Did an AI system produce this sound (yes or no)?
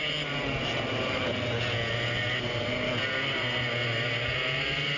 no